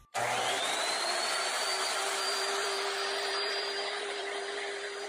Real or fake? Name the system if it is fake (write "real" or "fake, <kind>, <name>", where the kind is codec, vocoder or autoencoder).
fake, vocoder, BigVGAN v2